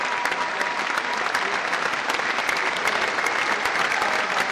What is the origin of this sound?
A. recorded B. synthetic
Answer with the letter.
A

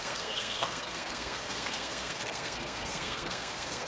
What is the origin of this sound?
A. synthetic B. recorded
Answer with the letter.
A